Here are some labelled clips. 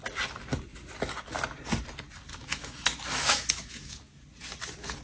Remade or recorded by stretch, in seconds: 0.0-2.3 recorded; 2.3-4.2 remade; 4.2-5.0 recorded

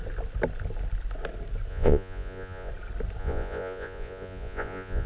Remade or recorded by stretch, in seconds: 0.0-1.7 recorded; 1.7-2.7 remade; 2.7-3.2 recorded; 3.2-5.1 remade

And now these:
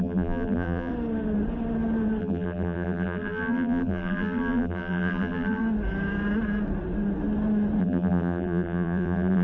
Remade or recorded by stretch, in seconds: 0.0-0.9 remade; 0.9-2.2 recorded; 2.2-5.6 remade; 5.6-7.8 recorded; 7.8-9.4 remade

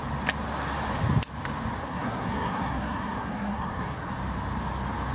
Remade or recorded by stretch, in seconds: 0.0-1.8 recorded; 1.8-4.1 remade; 4.1-5.1 recorded

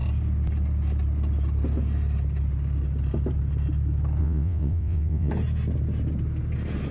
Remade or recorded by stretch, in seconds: 0.0-4.2 recorded; 4.2-5.3 remade; 5.3-6.9 recorded

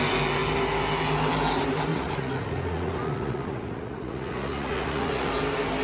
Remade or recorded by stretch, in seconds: 0.0-1.9 recorded; 1.9-5.3 remade; 5.3-5.8 recorded

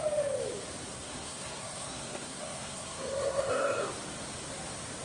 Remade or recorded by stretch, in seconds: 0.0-0.9 recorded; 0.9-3.9 remade; 3.9-5.0 recorded

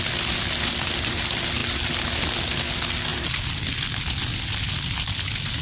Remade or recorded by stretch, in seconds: 0.0-5.6 recorded